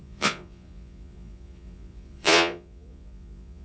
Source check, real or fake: fake